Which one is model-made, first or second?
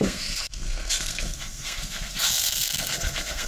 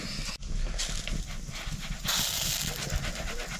first